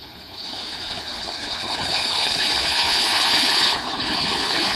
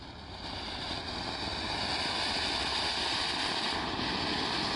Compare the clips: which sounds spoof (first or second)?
first